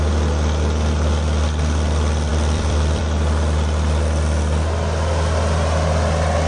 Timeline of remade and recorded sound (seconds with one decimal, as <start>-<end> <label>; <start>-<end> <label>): 0.0-2.3 recorded; 2.3-3.0 remade; 3.0-6.5 recorded